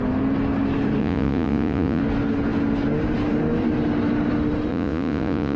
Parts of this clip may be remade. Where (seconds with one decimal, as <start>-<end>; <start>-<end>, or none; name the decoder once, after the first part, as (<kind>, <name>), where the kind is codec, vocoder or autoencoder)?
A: 1.0-2.0 (vocoder, Vocos); 4.7-5.6